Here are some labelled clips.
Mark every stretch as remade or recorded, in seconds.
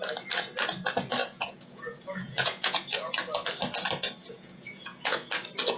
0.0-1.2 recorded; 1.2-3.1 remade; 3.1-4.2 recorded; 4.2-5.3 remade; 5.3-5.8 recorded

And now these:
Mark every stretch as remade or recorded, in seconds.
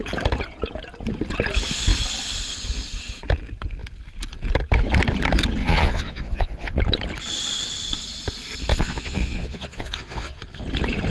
0.0-5.6 recorded; 5.6-6.8 remade; 6.8-8.7 recorded; 8.7-10.4 remade; 10.4-11.1 recorded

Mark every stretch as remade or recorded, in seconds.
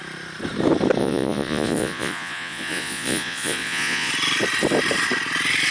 0.0-1.0 recorded; 1.0-4.1 remade; 4.1-5.7 recorded